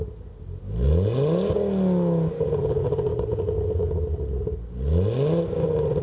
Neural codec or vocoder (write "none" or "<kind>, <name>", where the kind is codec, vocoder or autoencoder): none